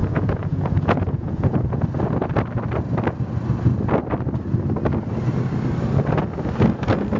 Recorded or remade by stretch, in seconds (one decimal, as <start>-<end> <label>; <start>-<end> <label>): 0.0-1.8 remade; 1.8-7.2 recorded